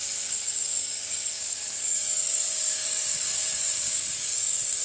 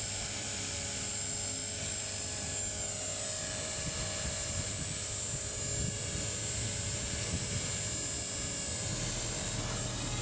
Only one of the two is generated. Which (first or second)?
first